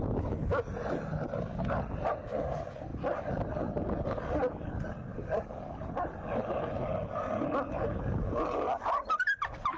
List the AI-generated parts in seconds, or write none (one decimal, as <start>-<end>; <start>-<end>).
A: none